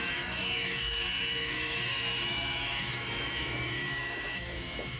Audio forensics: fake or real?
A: fake